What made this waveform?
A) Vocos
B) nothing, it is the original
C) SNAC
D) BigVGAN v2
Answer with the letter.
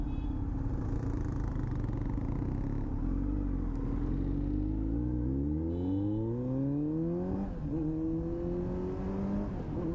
B